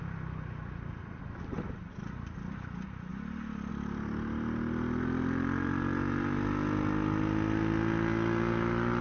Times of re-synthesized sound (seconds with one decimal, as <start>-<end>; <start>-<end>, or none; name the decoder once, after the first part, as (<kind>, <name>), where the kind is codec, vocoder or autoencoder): none

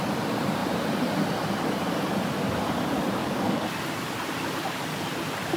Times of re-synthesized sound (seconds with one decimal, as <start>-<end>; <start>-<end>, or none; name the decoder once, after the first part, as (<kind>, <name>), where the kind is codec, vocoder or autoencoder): 3.2-3.7 (codec, DAC)